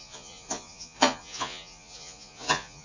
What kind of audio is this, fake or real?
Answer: fake